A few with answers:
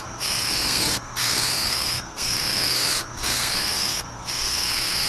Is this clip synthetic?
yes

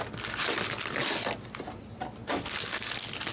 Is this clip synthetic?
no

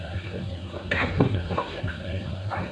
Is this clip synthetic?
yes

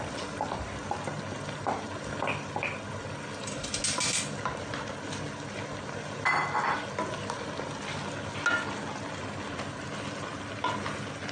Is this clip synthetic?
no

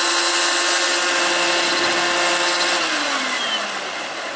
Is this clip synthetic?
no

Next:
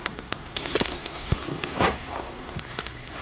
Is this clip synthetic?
yes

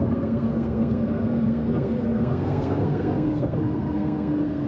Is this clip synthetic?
yes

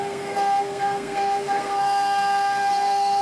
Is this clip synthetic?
yes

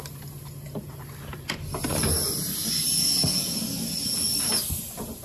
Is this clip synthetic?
no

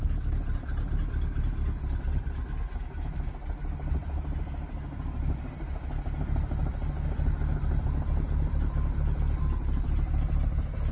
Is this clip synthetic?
no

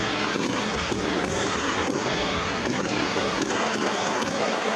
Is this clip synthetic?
yes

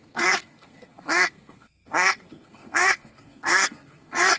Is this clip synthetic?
yes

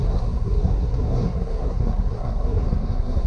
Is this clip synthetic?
yes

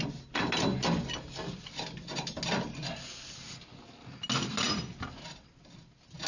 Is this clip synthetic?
no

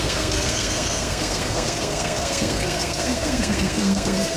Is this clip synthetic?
yes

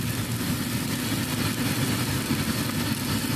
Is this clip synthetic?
no